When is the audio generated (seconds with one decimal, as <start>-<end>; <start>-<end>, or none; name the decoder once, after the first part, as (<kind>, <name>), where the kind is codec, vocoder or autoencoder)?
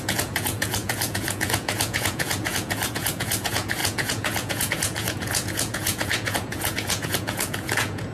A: 0.0-8.1 (vocoder, Vocos)